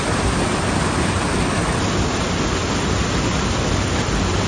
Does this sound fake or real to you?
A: real